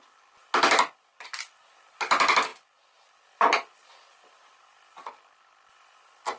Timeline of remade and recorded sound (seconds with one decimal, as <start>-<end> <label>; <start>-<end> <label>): 0.0-6.4 recorded